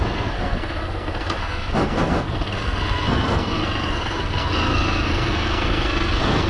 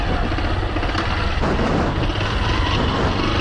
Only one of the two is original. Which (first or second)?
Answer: second